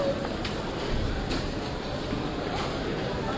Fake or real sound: real